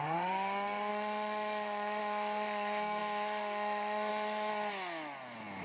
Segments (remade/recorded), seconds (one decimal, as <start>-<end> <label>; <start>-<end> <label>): 0.0-4.5 remade; 4.5-5.6 recorded

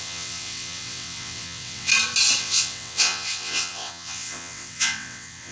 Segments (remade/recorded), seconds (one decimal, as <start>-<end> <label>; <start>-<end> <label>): 0.0-1.9 remade; 1.9-2.4 recorded; 2.4-5.5 remade

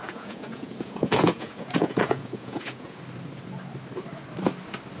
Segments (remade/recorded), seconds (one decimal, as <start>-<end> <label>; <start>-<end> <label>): 0.0-3.0 remade; 3.0-5.0 recorded